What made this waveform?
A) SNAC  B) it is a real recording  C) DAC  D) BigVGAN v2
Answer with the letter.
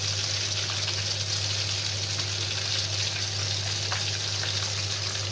B